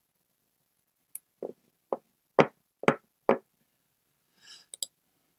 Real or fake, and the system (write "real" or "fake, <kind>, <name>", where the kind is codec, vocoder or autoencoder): real